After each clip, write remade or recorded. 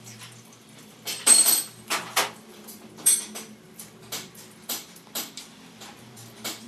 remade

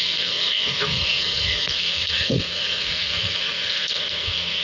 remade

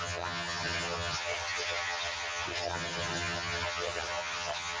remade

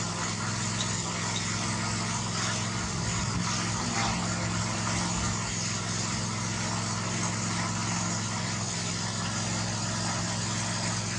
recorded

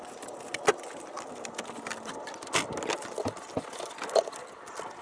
recorded